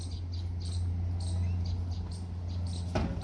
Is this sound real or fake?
real